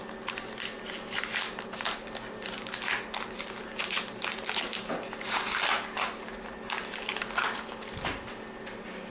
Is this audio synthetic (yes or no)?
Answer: no